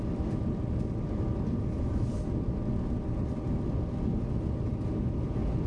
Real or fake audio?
real